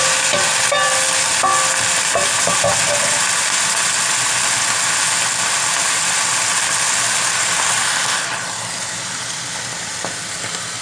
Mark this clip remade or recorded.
recorded